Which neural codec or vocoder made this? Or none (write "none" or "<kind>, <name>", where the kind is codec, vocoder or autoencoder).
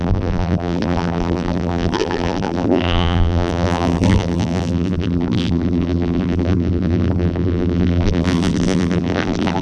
vocoder, BigVGAN v2